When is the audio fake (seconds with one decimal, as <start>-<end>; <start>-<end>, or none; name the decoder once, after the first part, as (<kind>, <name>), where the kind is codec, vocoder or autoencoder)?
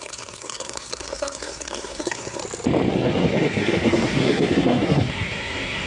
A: 0.0-2.4 (codec, SNAC); 2.9-5.9